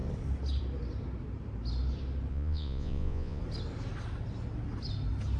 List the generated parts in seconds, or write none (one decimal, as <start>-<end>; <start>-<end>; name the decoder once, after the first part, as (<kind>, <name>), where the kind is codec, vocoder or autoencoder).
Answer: 2.3-3.4 (vocoder, Vocos)

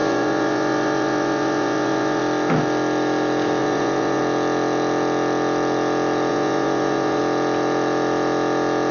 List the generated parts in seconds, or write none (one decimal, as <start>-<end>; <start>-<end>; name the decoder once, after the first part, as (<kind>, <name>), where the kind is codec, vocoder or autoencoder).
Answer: 0.0-2.2 (vocoder, Vocos); 3.6-4.2; 6.3-7.2

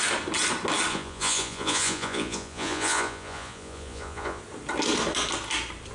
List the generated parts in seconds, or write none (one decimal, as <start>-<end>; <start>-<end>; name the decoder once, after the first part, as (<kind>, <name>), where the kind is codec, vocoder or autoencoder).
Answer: 0.9-4.4 (vocoder, Vocos)

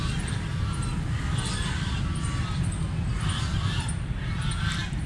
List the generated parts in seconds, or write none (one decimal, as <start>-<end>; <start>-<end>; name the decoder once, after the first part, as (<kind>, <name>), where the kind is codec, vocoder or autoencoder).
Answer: none